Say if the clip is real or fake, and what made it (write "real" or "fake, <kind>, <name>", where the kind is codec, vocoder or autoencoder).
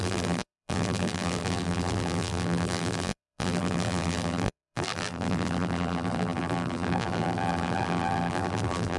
fake, vocoder, BigVGAN v2